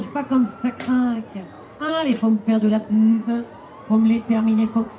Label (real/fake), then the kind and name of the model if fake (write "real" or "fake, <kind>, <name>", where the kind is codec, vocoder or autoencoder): fake, vocoder, Vocos